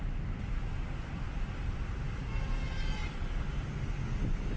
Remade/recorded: recorded